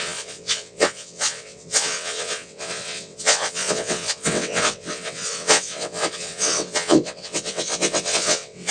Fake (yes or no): yes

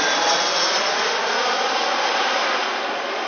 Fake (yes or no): no